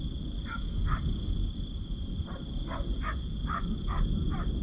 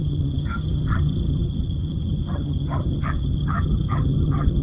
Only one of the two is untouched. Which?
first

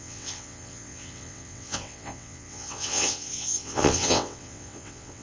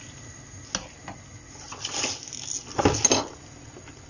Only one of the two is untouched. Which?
second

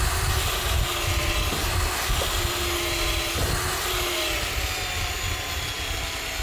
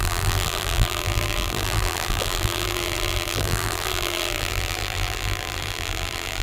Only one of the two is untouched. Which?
first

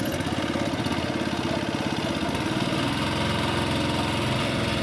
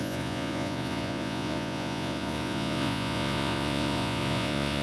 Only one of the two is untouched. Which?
first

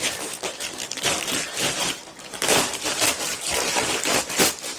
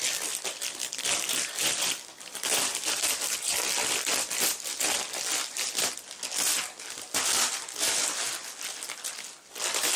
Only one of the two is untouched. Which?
second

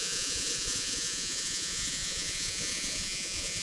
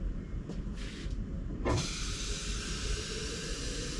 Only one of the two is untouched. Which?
second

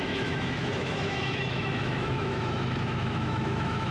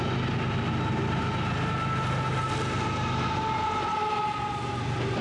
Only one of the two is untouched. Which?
second